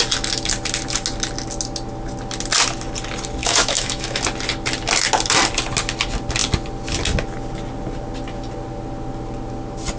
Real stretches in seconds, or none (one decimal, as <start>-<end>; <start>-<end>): 0.0-3.4; 4.2-10.0